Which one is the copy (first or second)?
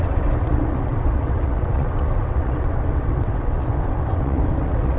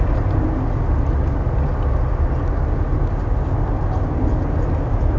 first